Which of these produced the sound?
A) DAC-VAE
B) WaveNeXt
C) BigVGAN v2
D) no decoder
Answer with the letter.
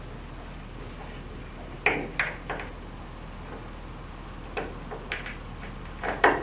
D